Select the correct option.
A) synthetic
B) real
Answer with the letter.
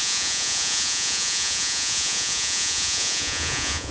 A